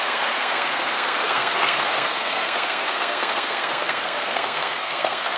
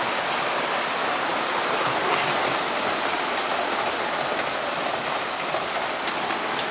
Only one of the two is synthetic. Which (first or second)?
first